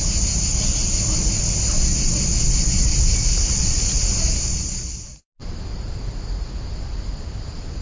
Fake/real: real